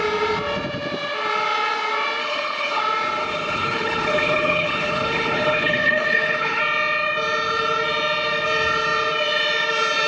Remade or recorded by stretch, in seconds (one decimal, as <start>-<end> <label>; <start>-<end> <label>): 0.0-2.2 recorded; 2.2-2.8 remade; 2.8-3.2 recorded; 3.2-6.6 remade; 6.6-10.1 recorded

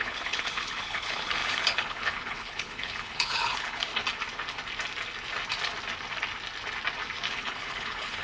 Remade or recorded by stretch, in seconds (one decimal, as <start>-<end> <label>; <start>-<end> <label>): 0.0-3.9 remade; 3.9-7.3 recorded; 7.3-8.2 remade

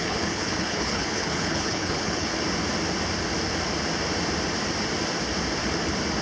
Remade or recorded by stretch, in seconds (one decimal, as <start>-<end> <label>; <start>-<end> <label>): 0.0-2.3 remade; 2.3-6.2 recorded

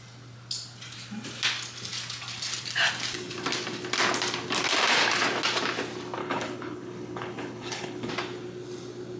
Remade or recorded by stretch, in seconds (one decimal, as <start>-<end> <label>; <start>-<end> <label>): 0.0-6.2 recorded; 6.2-8.1 remade; 8.1-9.2 recorded

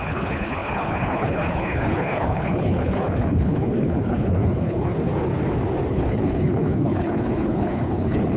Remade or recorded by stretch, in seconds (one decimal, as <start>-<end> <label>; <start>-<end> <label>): 0.0-5.1 remade; 5.1-5.9 recorded; 5.9-8.4 remade

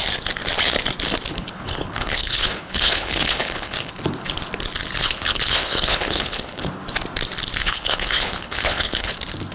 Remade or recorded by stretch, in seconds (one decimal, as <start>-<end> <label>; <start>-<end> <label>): 0.0-1.3 recorded; 1.3-3.9 remade; 3.9-5.0 recorded; 5.0-6.7 remade; 6.7-7.6 recorded; 7.6-9.1 remade; 9.1-9.5 recorded

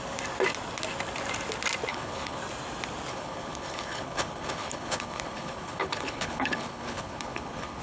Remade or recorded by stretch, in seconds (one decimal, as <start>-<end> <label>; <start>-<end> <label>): 0.0-1.9 recorded; 1.9-2.4 remade; 2.4-3.1 recorded; 3.1-7.8 remade

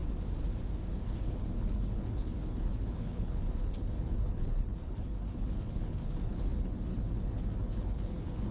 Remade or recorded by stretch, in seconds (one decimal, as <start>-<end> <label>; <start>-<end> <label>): 0.0-0.9 recorded; 0.9-8.5 remade